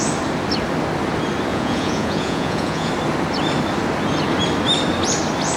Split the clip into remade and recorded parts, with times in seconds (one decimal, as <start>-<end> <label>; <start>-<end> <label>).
0.0-1.5 recorded; 1.5-2.9 remade; 2.9-5.6 recorded